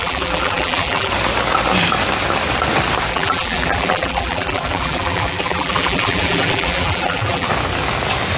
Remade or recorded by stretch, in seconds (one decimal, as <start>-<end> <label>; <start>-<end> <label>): 0.0-1.1 remade; 1.1-3.1 recorded; 3.1-7.5 remade; 7.5-8.4 recorded